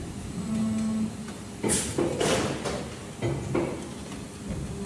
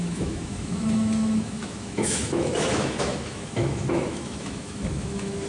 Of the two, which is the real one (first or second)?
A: first